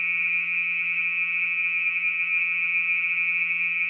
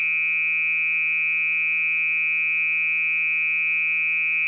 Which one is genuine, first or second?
second